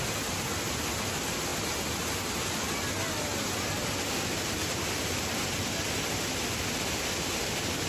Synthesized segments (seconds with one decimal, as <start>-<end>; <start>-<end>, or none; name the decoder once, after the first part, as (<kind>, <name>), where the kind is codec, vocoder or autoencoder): none